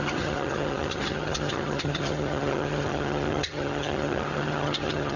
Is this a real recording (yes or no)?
no